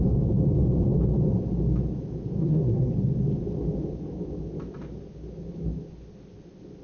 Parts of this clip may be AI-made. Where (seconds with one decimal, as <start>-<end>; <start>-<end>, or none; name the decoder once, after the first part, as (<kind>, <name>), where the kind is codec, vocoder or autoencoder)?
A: 2.4-2.9 (codec, SNAC)